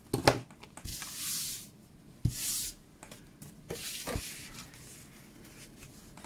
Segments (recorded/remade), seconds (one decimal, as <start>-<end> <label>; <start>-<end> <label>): 0.0-6.3 recorded

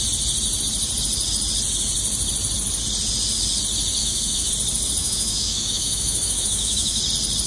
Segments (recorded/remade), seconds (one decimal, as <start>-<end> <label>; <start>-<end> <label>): 0.0-4.0 recorded; 4.0-4.5 remade; 4.5-5.0 recorded; 5.0-7.0 remade; 7.0-7.5 recorded

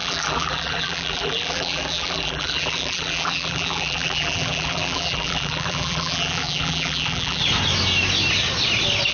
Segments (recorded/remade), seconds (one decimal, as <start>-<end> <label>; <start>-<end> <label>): 0.0-7.4 remade; 7.4-9.1 recorded

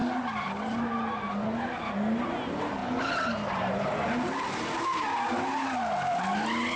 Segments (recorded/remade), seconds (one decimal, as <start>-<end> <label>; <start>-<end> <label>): 0.0-6.8 recorded

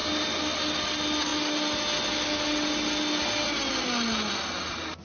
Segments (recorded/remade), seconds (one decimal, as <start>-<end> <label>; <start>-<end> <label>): 0.0-5.0 recorded